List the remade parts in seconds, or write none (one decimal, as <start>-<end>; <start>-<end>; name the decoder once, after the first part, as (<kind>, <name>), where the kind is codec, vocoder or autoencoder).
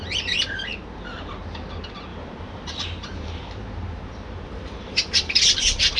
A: 0.7-1.3 (vocoder, BigVGAN v2); 2.1-5.4